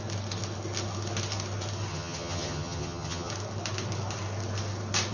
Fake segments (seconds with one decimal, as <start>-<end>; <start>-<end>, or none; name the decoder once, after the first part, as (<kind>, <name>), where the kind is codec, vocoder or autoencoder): 1.9-3.3 (vocoder, HiFi-GAN)